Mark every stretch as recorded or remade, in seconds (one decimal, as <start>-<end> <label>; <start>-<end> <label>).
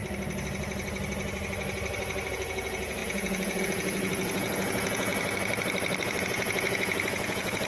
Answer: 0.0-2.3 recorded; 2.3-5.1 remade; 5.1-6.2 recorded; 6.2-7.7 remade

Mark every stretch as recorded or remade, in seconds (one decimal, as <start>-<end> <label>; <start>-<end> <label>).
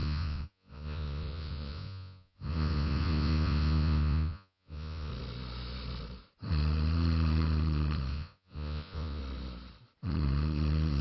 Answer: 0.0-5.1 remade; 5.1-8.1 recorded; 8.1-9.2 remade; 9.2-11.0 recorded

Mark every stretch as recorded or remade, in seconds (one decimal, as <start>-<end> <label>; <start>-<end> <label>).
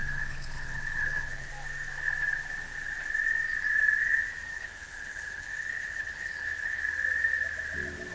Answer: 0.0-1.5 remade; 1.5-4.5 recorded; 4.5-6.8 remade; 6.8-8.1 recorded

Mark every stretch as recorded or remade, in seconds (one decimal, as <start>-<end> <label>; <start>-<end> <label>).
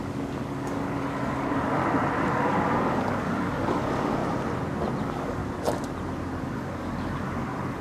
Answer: 0.0-1.8 remade; 1.8-2.3 recorded; 2.3-4.2 remade; 4.2-5.0 recorded; 5.0-5.4 remade; 5.4-6.4 recorded; 6.4-7.8 remade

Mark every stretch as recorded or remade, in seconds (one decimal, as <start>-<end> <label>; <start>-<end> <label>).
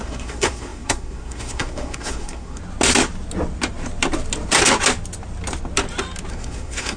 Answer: 0.0-2.6 remade; 2.6-6.3 recorded; 6.3-7.0 remade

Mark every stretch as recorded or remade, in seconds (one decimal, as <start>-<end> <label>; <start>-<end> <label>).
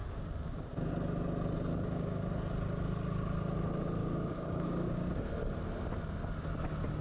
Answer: 0.0-0.9 remade; 0.9-1.7 recorded; 1.7-2.3 remade; 2.3-4.0 recorded; 4.0-5.3 remade; 5.3-7.0 recorded